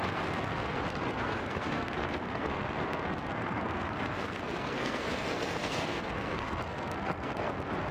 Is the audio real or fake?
fake